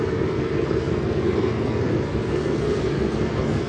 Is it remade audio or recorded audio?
remade